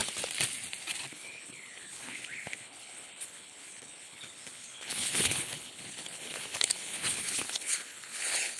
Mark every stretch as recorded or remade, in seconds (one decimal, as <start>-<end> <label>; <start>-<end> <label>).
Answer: 0.0-1.1 recorded; 1.1-8.6 remade